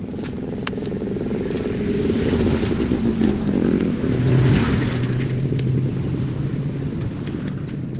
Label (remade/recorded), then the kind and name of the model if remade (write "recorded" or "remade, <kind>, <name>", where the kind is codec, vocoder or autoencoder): recorded